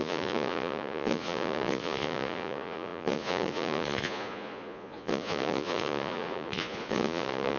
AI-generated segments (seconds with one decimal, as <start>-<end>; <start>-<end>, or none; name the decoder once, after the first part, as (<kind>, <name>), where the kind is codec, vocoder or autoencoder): 0.0-7.6 (vocoder, Vocos)